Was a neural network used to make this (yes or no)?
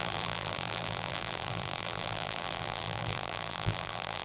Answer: yes